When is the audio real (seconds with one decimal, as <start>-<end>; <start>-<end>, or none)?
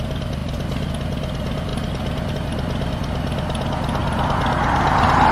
0.0-5.3